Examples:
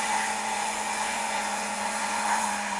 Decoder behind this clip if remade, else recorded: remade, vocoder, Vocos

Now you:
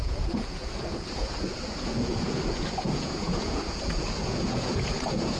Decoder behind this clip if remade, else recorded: remade, vocoder, Vocos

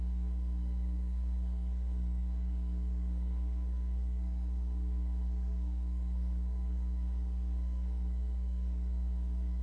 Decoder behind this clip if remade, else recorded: remade, codec, SNAC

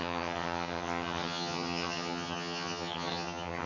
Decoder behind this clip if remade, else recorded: remade, vocoder, HiFi-GAN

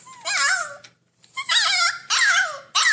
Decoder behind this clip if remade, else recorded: recorded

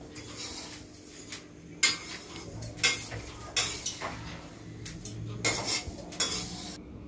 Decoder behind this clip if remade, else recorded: recorded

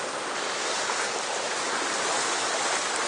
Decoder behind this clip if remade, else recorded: recorded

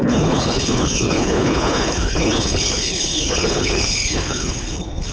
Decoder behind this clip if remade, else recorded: remade, codec, HILCodec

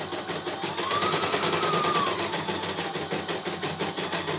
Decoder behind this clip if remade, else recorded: recorded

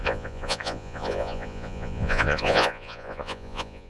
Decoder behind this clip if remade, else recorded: remade, vocoder, Vocos